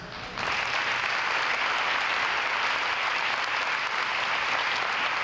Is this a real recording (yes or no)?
yes